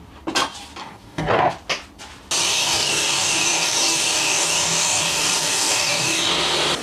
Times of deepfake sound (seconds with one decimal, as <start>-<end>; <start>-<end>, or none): 0.8-1.4; 2.4-6.3